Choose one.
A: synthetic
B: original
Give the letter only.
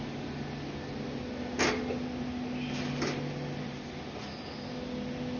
B